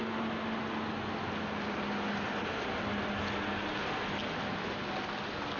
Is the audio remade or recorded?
recorded